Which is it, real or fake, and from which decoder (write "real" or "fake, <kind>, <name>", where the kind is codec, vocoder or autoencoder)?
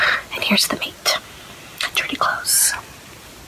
real